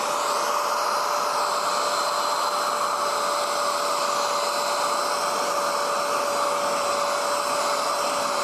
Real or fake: real